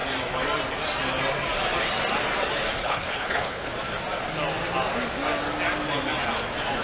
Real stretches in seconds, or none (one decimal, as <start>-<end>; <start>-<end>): 0.0-2.8; 3.7-6.8